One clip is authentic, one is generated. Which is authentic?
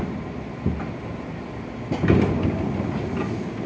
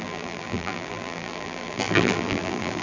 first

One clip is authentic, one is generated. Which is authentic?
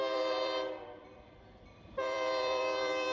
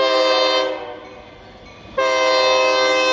second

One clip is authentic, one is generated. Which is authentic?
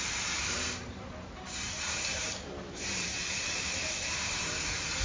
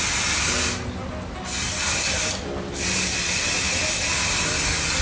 second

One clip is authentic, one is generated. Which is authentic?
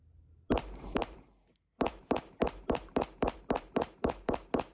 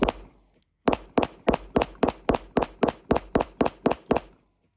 second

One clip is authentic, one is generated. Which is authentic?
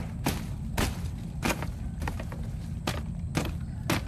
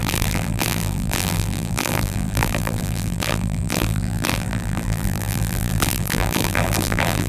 first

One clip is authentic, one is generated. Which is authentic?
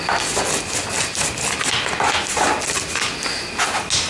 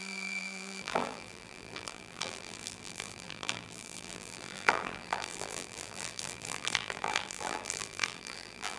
first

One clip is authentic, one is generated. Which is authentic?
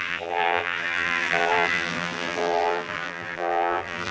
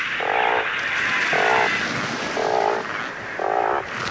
second